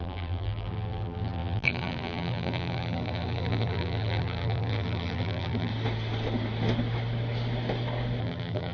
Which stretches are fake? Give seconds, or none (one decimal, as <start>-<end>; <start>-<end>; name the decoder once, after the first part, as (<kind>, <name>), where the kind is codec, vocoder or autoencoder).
0.0-5.7 (vocoder, BigVGAN v2); 8.2-8.7